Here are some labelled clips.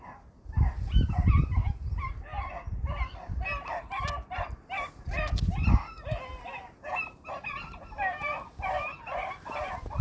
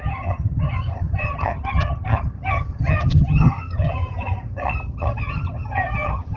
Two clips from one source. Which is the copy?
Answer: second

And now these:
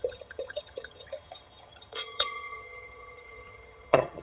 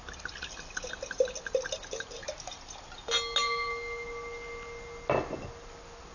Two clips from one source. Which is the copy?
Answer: first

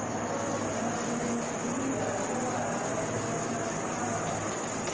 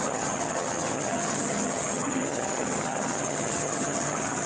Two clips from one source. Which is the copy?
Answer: second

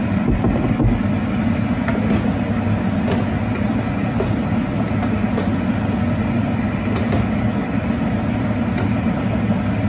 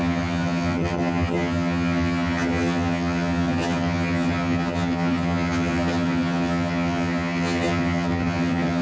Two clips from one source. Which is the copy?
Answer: second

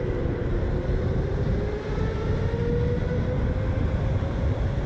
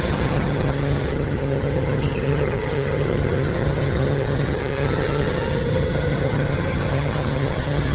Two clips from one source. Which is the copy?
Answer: second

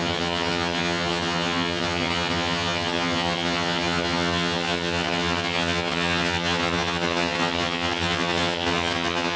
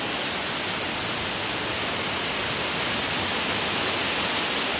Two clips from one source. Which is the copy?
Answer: first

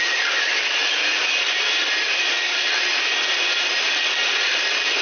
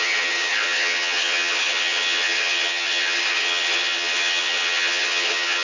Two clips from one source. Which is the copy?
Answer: second